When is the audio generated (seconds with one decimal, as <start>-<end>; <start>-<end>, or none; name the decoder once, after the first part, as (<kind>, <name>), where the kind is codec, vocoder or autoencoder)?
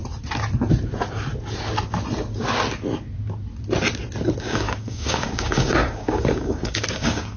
4.4-7.4 (codec, DAC)